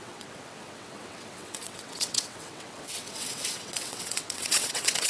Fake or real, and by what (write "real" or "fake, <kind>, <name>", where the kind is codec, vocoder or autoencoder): fake, vocoder, WaveNeXt